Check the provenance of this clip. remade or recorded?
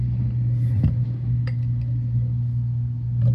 recorded